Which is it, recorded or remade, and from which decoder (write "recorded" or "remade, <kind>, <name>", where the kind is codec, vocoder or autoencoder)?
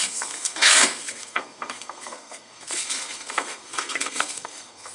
remade, codec, SNAC